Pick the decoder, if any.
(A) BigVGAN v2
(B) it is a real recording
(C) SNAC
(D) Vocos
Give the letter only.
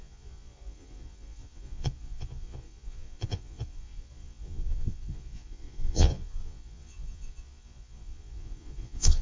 D